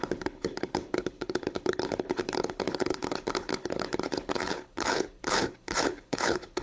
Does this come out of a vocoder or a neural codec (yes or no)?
yes